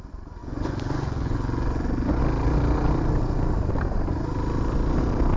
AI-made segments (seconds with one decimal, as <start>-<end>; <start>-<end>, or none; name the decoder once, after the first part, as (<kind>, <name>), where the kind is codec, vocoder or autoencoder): 0.4-2.2 (vocoder, Vocos)